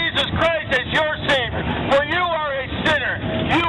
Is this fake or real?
real